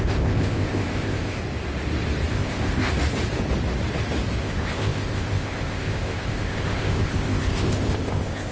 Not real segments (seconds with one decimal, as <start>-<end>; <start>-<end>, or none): 0.0-1.4; 2.3-2.9; 4.4-8.5